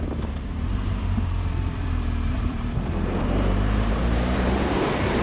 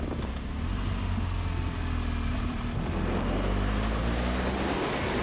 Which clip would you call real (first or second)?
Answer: second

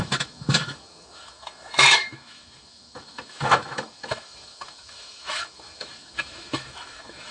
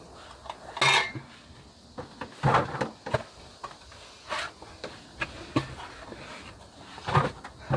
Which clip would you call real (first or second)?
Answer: second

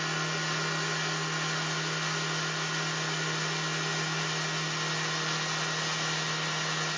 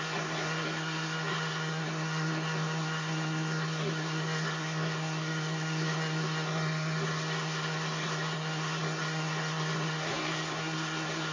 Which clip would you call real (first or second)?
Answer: first